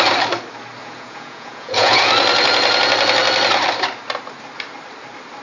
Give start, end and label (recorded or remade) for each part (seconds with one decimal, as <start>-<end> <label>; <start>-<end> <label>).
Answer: 0.0-0.8 recorded; 0.8-2.1 remade; 2.1-5.4 recorded